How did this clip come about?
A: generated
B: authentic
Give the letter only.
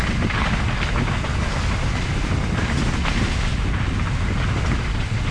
B